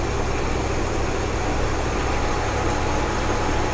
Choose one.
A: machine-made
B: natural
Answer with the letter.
B